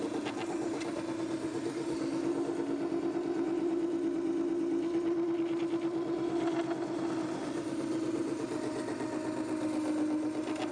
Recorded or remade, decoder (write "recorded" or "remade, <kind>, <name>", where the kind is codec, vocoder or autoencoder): recorded